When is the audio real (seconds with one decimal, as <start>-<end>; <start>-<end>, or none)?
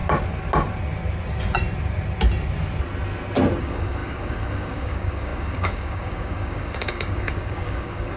0.0-3.6